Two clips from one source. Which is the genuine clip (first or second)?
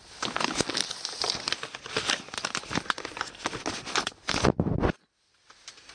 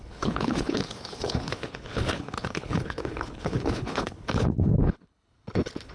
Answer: first